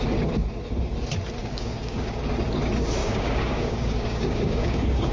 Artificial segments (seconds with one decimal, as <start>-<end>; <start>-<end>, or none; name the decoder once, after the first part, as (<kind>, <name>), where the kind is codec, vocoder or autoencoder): 1.4-2.2 (codec, DAC); 3.0-5.1